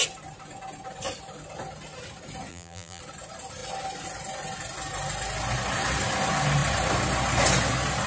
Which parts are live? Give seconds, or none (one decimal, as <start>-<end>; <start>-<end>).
0.0-2.5; 3.0-8.1

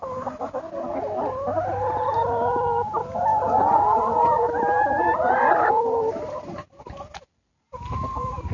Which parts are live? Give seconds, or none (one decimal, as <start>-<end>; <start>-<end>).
0.0-3.3; 5.0-8.5

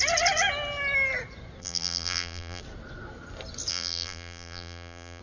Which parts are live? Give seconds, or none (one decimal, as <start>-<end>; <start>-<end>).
0.0-1.6; 2.6-3.7

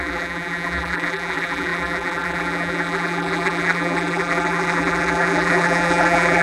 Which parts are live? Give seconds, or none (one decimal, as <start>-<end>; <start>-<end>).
none

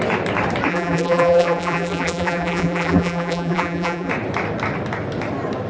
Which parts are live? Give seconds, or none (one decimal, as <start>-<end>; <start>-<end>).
0.0-0.7; 4.1-5.7

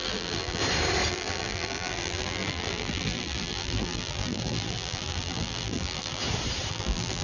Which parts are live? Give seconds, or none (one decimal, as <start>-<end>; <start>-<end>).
0.6-1.1; 6.2-6.7

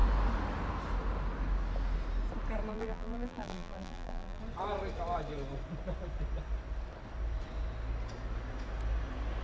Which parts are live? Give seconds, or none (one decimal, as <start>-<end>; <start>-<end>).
0.0-2.7; 4.4-9.4